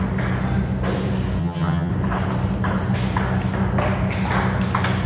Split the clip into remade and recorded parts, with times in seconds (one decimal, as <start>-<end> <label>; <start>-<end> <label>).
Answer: 0.0-1.4 recorded; 1.4-1.9 remade; 1.9-5.1 recorded